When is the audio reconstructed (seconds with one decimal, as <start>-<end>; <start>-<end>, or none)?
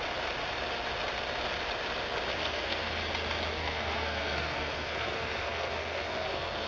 2.4-3.0; 3.6-6.7